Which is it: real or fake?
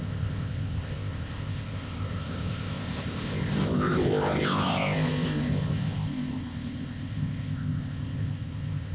fake